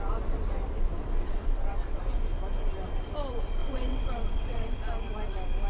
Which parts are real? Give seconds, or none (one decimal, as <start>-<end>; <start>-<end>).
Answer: 0.0-1.3; 2.0-3.6; 4.7-5.7